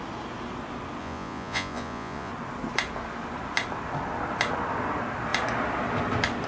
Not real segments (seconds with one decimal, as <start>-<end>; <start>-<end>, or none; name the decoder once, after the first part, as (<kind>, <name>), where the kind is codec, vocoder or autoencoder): 1.0-2.3 (vocoder, Vocos)